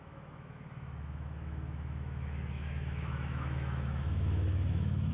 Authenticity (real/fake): fake